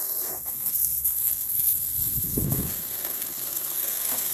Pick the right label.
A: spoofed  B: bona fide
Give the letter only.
A